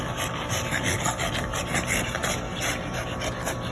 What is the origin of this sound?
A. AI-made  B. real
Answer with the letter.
B